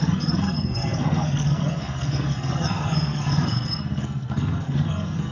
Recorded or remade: remade